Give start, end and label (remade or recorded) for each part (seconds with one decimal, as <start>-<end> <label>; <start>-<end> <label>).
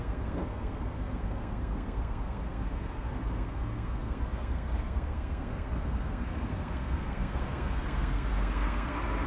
0.0-9.3 remade